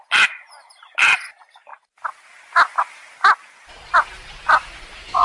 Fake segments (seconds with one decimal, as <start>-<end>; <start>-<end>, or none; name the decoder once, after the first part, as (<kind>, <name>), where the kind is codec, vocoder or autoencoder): none